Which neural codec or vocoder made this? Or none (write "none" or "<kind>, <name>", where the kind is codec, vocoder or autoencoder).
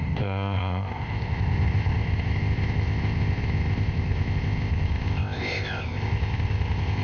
codec, ZipCodec